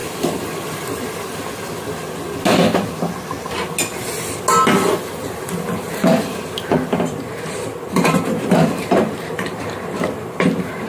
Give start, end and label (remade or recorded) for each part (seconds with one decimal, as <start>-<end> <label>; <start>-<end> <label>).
0.0-4.7 recorded; 4.7-10.9 remade